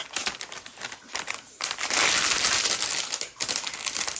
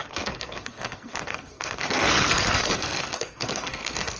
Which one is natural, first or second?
first